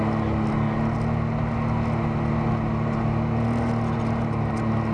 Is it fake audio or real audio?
real